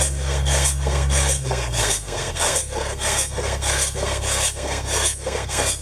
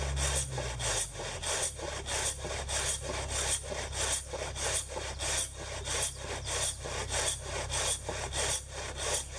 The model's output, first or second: first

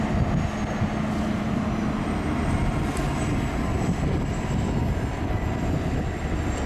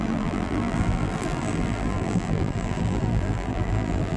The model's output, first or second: second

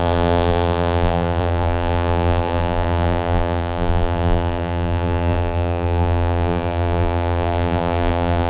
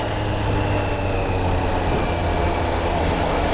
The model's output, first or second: first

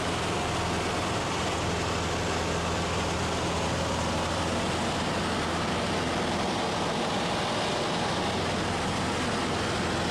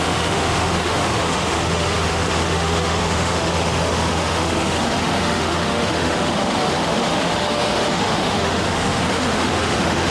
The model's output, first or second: second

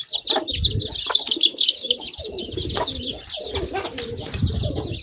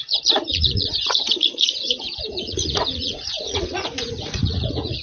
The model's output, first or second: second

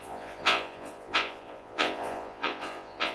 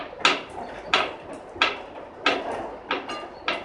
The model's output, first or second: first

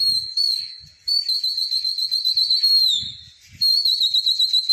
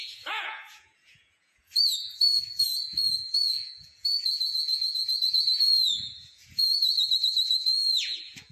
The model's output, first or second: second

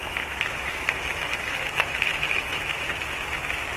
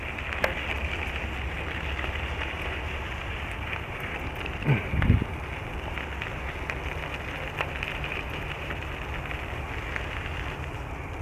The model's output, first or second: first